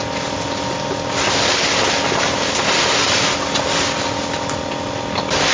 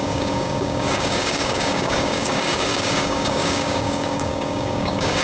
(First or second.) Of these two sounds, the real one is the first